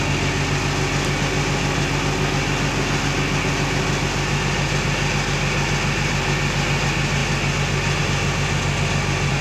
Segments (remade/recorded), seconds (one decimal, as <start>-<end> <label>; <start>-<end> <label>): 0.0-9.4 recorded